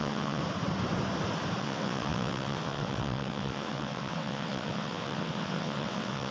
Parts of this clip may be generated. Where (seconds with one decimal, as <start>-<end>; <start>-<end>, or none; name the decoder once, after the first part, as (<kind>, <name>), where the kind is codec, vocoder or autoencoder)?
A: 0.0-0.4 (vocoder, WaveNeXt); 1.6-6.3